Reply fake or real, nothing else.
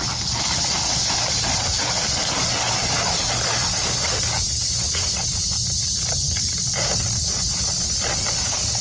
real